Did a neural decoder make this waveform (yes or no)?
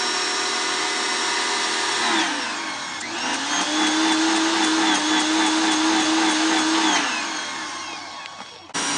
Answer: no